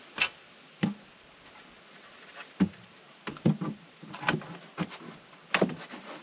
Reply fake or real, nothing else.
real